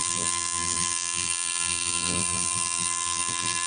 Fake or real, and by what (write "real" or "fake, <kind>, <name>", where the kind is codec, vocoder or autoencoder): fake, vocoder, BigVGAN v2